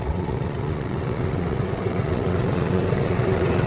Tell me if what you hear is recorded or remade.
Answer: remade